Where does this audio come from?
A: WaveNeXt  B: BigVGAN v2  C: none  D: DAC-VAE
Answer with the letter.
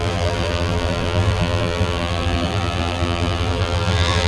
B